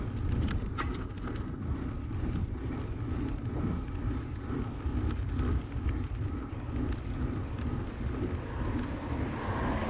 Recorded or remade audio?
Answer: recorded